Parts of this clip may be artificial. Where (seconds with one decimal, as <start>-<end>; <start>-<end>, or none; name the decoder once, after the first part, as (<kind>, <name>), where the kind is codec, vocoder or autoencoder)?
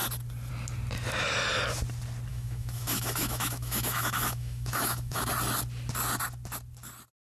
2.3-5.3 (autoencoder, DAC-VAE)